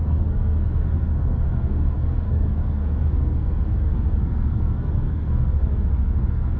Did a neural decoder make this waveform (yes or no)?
yes